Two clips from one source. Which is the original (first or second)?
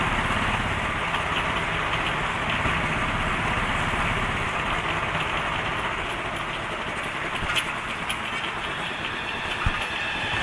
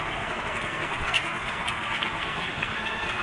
first